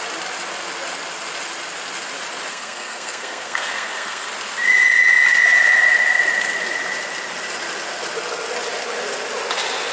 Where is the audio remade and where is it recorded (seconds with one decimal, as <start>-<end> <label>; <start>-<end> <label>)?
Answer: 0.0-2.5 recorded; 2.5-4.3 remade; 4.3-9.9 recorded